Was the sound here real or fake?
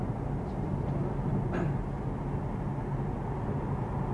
real